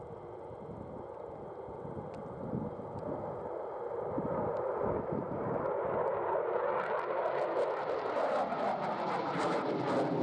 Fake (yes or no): no